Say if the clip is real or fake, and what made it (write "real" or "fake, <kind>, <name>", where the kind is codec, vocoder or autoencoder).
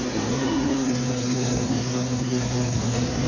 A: fake, codec, SNAC